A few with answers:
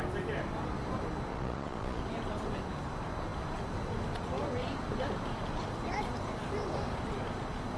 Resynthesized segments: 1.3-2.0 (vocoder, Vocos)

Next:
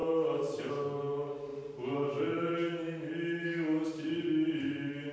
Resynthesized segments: 0.0-0.7 (vocoder, BigVGAN v2); 1.5-2.5